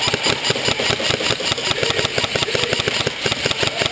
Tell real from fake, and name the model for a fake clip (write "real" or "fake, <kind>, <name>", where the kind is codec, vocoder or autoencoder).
real